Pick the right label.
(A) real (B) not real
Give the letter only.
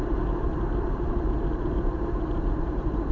B